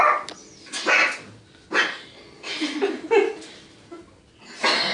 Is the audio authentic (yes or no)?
yes